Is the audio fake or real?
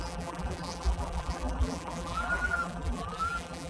fake